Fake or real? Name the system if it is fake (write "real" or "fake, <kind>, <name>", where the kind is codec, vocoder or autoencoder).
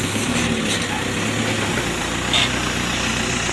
real